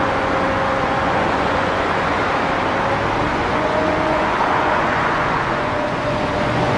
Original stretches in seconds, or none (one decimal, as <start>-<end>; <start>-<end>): 2.2-3.3